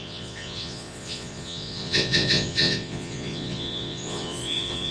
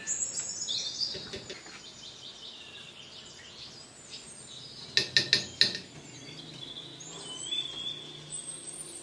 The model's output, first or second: first